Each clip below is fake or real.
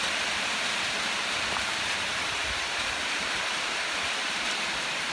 fake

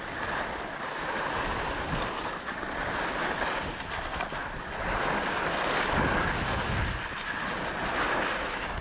real